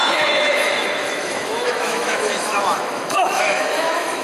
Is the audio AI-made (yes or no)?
yes